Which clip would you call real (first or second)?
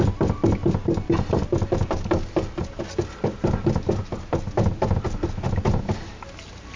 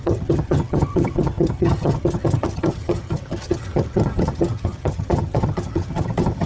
first